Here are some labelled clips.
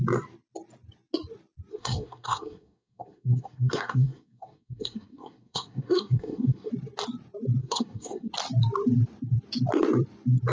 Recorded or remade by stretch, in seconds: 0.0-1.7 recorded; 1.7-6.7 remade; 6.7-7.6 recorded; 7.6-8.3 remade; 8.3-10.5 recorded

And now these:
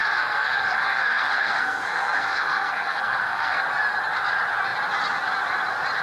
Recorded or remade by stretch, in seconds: 0.0-3.6 remade; 3.6-6.0 recorded